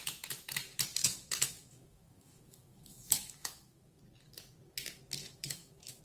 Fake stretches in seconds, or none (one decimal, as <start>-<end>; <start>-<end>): 0.0-0.5; 1.0-4.0; 5.2-6.0